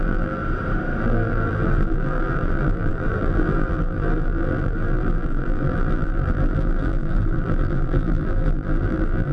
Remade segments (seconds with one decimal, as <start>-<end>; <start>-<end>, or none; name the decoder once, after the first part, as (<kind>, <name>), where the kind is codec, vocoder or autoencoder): 0.0-0.4 (vocoder, BigVGAN v2); 1.0-9.3